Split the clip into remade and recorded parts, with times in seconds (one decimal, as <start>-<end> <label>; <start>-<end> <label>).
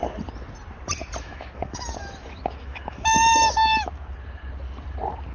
0.0-1.2 recorded; 1.2-3.9 remade; 3.9-5.3 recorded